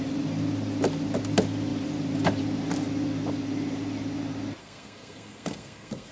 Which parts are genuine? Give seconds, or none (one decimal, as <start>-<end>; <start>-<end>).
0.0-4.6

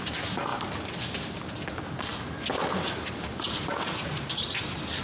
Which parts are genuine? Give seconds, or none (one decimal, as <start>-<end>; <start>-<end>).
0.0-5.0

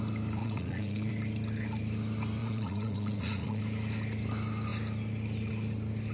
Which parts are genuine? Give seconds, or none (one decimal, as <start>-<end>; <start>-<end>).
0.0-0.4; 1.1-2.4; 3.6-6.1

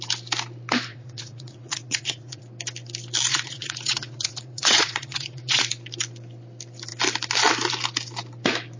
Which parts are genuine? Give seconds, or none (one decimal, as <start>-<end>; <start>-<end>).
0.0-0.9; 2.4-3.3; 5.6-8.8

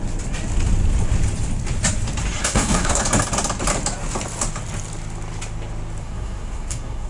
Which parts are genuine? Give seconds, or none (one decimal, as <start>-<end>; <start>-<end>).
0.0-2.4; 3.0-6.0